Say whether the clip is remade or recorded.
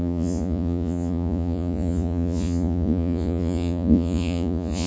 remade